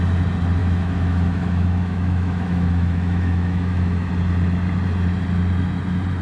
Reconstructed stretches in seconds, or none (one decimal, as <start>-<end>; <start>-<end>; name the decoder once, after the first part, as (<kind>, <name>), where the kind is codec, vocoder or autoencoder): 0.6-4.1 (autoencoder, DAC-VAE)